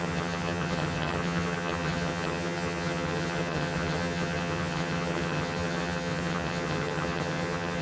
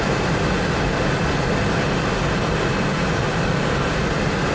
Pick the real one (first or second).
second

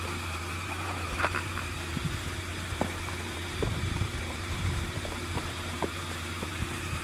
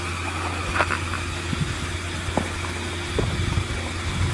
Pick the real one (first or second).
second